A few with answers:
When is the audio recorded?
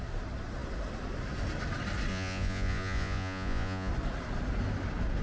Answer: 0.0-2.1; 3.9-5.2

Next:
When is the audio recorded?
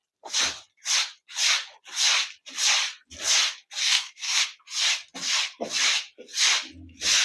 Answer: 0.0-3.8; 4.4-7.2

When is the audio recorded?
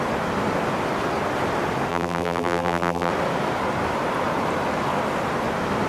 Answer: 0.0-1.9; 3.1-5.9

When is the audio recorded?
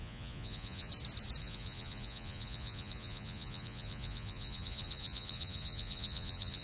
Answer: 0.9-1.4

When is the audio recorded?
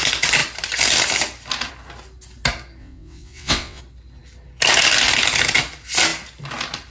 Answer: 0.0-2.8; 3.8-6.9